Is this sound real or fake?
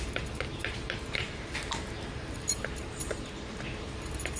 fake